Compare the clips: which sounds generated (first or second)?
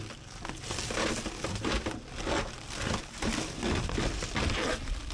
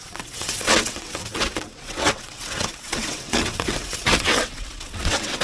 second